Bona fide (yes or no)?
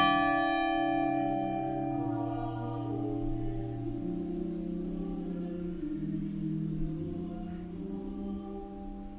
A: yes